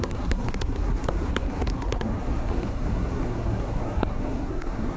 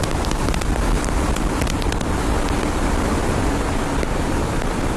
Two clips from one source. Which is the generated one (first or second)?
first